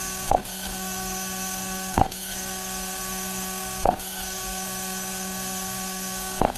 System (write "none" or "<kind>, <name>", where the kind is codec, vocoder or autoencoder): codec, SNAC